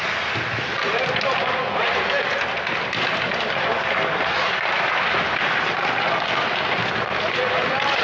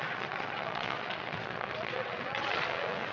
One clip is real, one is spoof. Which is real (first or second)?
first